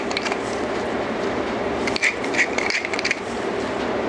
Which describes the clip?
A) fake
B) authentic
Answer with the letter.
A